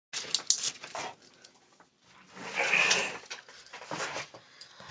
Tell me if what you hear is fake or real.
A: real